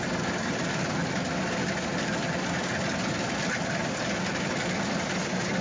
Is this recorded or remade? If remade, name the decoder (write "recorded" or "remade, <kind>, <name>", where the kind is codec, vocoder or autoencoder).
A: recorded